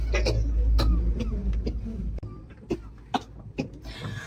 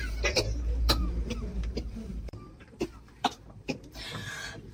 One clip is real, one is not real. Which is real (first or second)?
first